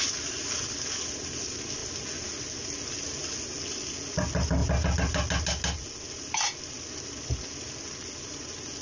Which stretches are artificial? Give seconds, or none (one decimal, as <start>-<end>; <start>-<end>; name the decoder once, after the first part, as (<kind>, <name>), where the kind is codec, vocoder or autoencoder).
none